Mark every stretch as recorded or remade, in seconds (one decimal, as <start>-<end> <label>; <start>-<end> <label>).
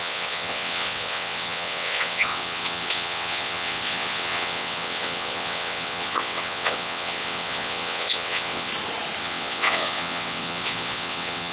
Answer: 0.0-8.7 remade; 8.7-9.2 recorded; 9.2-11.5 remade